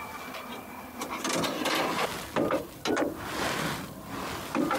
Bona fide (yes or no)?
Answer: yes